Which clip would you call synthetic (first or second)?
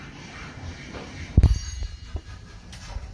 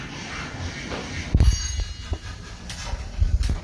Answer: first